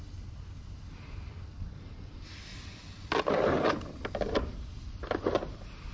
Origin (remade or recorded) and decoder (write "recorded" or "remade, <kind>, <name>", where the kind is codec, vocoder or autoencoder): recorded